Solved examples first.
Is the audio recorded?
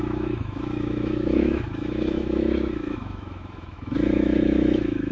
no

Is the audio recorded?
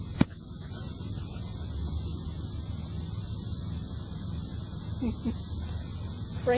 yes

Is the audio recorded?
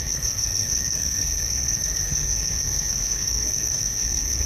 no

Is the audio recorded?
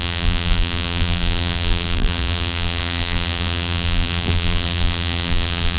no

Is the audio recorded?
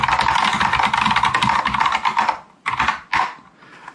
yes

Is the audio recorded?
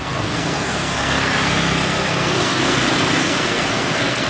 no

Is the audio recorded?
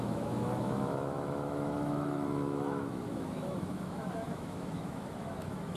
no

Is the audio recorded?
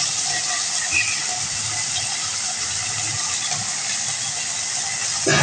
yes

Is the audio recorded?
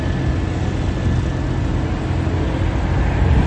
yes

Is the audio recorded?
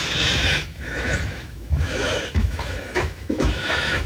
no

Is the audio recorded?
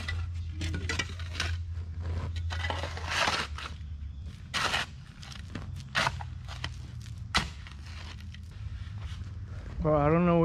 yes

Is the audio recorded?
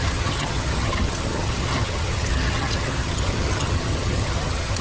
no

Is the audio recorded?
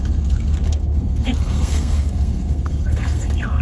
no